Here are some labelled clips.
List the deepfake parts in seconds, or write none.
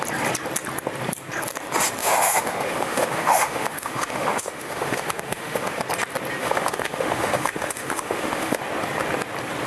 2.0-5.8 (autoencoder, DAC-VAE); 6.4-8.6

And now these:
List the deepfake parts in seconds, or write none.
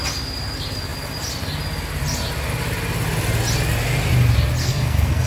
4.6-5.3 (codec, SNAC)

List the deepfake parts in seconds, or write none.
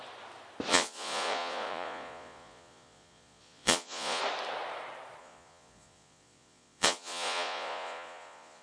0.7-4.2 (vocoder, Vocos); 5.2-8.6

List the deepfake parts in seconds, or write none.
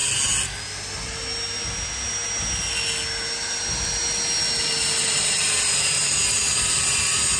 4.8-7.4 (vocoder, BigVGAN v2)